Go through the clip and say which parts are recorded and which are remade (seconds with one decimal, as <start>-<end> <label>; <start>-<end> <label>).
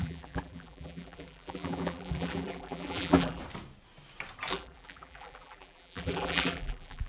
0.0-3.4 remade; 3.4-4.5 recorded; 4.5-7.1 remade